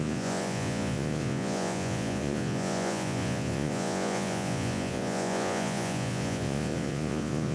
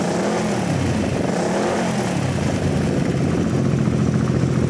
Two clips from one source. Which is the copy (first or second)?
first